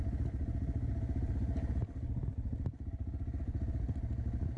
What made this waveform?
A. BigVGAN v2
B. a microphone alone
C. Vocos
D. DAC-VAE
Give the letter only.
B